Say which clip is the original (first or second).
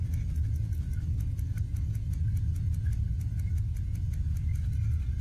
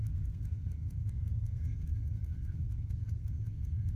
first